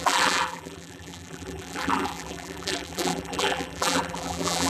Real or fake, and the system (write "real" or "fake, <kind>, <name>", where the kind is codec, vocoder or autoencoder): fake, vocoder, BigVGAN v2